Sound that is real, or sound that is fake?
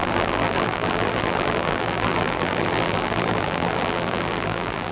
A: fake